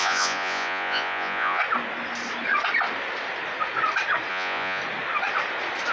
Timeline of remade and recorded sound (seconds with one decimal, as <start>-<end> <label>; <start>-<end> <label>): 0.0-1.6 remade; 1.6-4.3 recorded; 4.3-4.8 remade; 4.8-5.9 recorded